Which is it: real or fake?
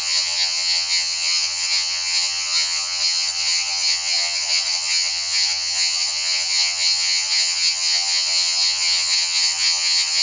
fake